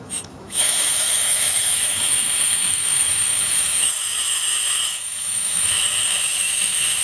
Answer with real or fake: fake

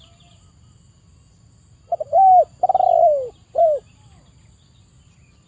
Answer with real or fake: real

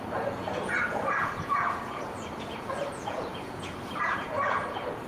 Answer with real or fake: fake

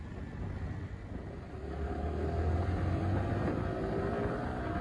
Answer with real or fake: real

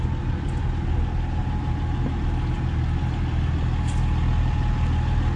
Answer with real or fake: real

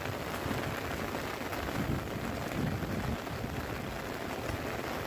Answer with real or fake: real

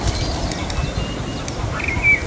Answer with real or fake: real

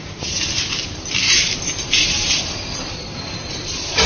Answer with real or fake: fake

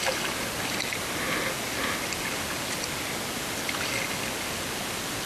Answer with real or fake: real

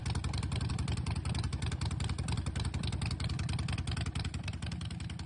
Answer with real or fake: real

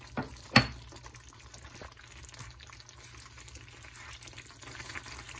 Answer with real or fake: real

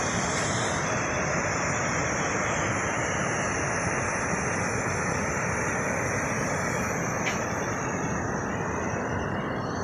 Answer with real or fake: real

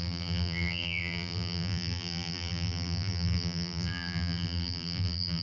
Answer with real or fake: fake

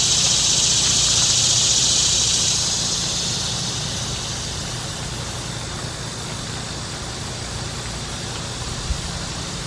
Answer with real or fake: real